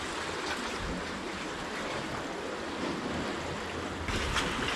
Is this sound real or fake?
real